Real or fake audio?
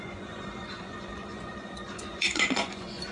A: fake